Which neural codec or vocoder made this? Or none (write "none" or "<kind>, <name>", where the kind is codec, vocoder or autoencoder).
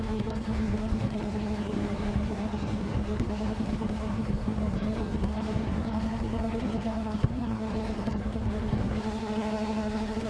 codec, SNAC